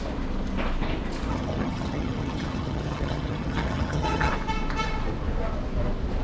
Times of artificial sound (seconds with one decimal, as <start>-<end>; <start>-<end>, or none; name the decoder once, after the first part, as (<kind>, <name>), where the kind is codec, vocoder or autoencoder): 1.3-4.3 (vocoder, HiFi-GAN)